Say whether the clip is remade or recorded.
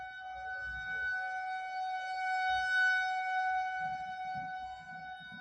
recorded